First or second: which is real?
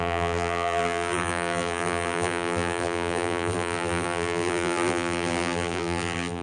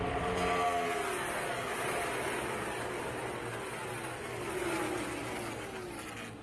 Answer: second